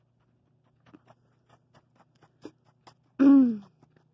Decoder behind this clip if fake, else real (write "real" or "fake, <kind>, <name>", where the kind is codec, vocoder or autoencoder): real